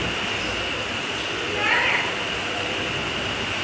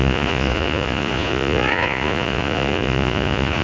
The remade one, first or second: second